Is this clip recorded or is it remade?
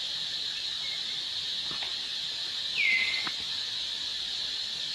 recorded